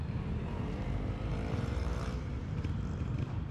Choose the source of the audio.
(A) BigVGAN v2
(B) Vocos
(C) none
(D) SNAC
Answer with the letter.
A